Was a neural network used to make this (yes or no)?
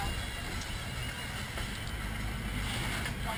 no